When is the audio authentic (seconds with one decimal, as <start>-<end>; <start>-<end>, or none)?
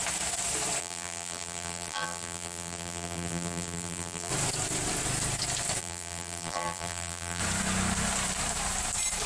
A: 0.0-0.8; 4.3-5.8; 7.4-9.3